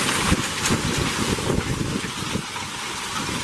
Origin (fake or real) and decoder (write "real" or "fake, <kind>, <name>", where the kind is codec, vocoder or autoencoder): real